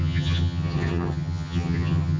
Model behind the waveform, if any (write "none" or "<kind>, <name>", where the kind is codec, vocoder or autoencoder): vocoder, HiFi-GAN